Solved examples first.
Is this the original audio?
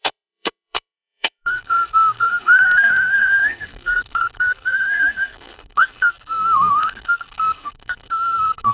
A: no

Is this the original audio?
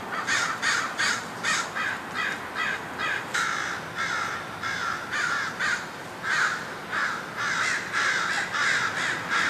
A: yes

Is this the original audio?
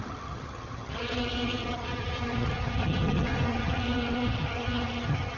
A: no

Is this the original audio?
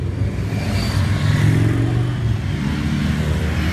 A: yes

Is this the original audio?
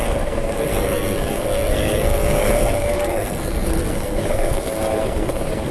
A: no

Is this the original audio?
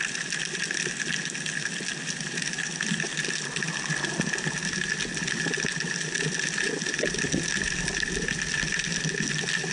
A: yes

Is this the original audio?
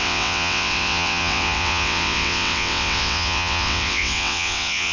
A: no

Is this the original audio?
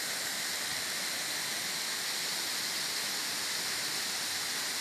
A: yes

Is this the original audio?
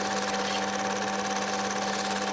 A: yes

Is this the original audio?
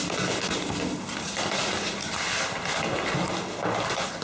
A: yes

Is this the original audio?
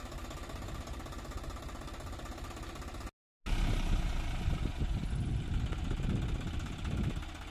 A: yes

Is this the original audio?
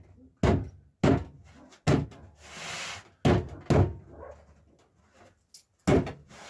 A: yes